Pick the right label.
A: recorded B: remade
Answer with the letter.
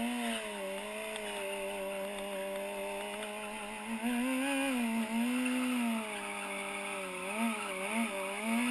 A